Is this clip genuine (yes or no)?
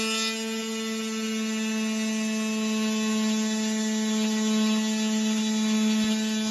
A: yes